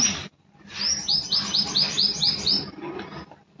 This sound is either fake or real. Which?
real